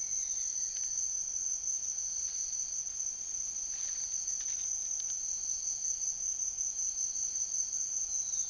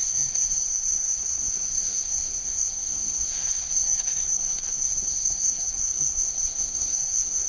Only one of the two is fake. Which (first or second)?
second